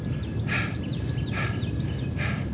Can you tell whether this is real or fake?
real